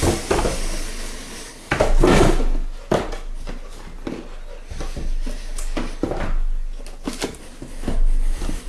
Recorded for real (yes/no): yes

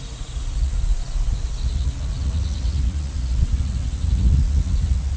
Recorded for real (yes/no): no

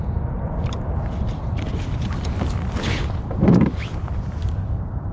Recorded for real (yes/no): yes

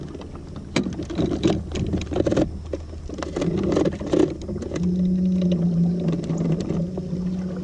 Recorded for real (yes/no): yes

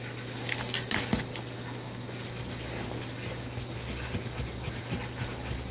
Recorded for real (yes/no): yes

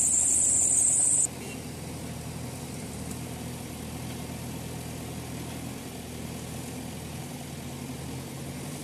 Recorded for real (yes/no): yes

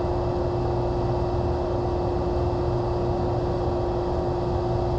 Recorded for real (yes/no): yes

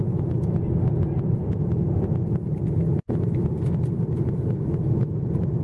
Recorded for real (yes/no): yes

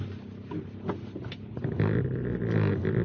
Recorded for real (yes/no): yes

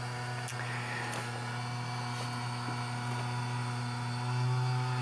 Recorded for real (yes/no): yes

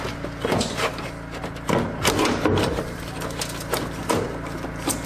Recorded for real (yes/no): yes